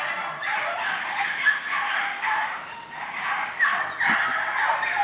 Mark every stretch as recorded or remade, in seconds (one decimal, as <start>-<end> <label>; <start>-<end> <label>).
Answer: 0.0-0.8 recorded; 0.8-3.8 remade; 3.8-5.0 recorded